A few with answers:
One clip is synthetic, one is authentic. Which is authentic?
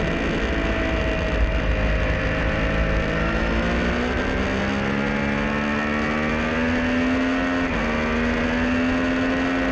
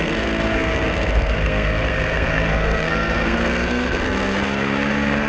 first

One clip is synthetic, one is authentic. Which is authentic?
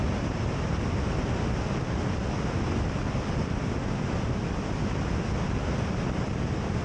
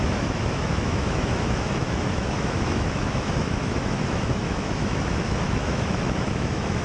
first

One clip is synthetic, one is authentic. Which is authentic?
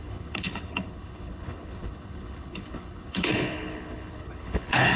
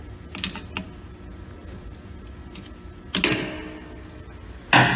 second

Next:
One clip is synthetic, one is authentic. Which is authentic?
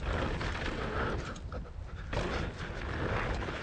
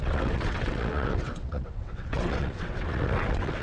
first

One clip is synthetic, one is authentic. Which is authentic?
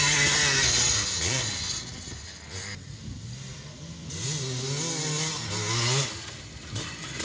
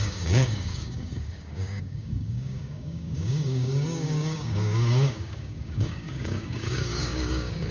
first